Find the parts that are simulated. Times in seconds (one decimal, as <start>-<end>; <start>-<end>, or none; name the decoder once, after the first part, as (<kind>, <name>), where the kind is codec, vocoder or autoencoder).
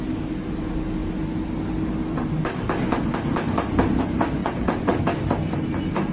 4.4-5.0 (vocoder, WaveNeXt)